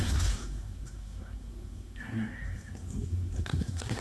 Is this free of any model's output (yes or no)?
no